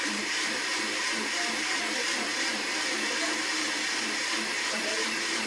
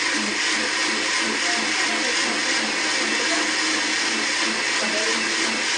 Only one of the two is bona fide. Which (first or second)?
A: second